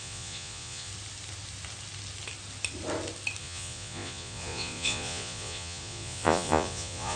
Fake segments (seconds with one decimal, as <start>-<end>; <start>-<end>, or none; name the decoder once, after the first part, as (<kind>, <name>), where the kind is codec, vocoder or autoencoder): 0.0-0.9 (vocoder, Vocos); 3.4-7.2